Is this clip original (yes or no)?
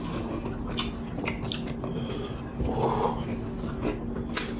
yes